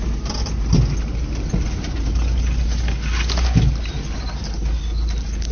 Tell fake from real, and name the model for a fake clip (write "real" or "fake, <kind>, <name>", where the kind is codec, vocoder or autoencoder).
real